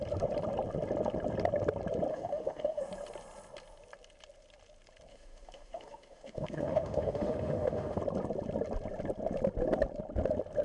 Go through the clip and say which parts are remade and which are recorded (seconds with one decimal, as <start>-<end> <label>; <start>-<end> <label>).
0.0-2.1 recorded; 2.1-2.8 remade; 2.8-5.1 recorded; 5.1-8.0 remade; 8.0-10.6 recorded